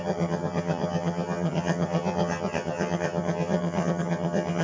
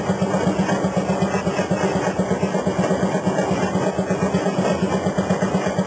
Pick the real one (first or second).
second